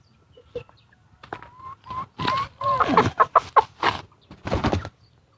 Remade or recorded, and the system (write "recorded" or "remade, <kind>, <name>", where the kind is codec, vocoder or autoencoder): recorded